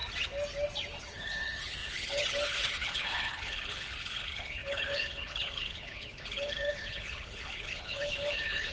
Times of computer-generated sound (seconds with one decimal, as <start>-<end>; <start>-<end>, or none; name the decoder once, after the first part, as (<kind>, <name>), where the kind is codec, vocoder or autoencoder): 1.0-8.7 (codec, HILCodec)